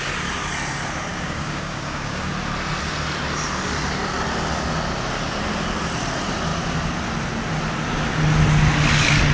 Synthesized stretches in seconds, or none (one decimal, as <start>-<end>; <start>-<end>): 1.1-2.3